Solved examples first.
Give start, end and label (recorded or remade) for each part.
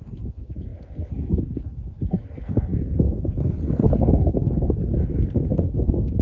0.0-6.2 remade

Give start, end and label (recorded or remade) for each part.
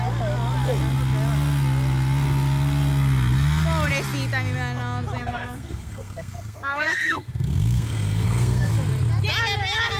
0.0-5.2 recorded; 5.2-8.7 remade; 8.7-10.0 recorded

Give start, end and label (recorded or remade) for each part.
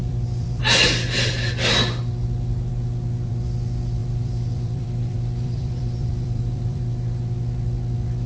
0.0-0.6 remade; 0.6-4.0 recorded; 4.0-6.8 remade; 6.8-8.3 recorded